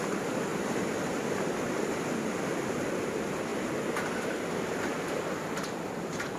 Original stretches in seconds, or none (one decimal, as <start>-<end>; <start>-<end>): 0.0-6.4